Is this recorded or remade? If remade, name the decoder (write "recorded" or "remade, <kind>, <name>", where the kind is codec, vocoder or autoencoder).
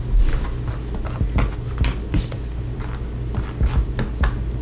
recorded